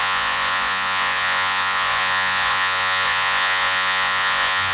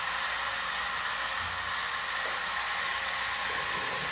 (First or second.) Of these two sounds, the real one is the second